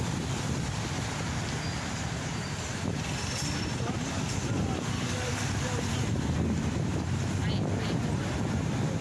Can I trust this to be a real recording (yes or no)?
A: yes